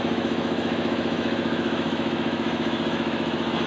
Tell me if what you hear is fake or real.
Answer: fake